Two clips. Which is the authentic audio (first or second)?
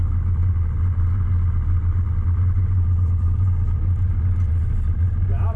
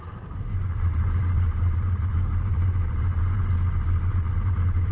first